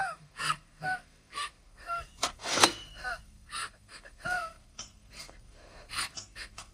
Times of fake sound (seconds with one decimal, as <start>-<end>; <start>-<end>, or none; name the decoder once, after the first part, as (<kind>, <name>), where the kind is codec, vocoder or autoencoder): 0.0-6.7 (codec, SNAC)

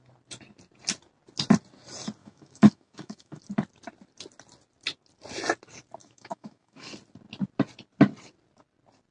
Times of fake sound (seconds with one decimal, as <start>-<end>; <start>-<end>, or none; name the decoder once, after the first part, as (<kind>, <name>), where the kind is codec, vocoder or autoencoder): 2.2-3.4 (autoencoder, DAC-VAE); 6.0-6.9

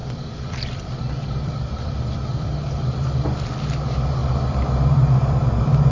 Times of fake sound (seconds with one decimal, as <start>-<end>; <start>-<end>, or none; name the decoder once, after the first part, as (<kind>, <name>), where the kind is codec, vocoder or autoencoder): 0.0-3.5 (vocoder, BigVGAN v2); 4.2-5.9

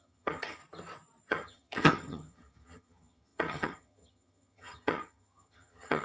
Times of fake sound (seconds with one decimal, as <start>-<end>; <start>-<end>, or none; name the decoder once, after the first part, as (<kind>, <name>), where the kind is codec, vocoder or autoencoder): 0.0-0.6 (vocoder, HiFi-GAN); 1.3-6.0